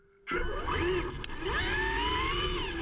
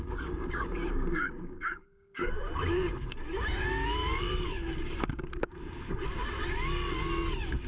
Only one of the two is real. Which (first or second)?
first